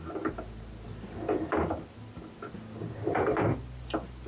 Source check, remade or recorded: recorded